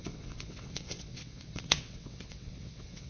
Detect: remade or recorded remade